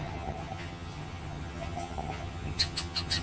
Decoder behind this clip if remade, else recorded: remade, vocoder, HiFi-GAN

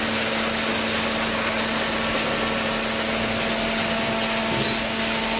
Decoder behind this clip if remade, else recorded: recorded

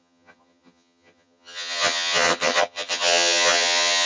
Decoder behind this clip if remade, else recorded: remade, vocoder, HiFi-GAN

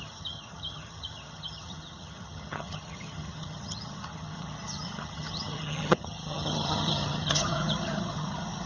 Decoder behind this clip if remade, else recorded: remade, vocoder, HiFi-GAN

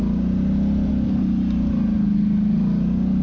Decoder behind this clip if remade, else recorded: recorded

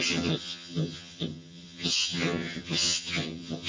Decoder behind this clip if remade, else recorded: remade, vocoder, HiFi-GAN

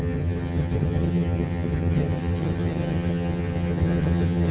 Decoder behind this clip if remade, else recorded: remade, vocoder, HiFi-GAN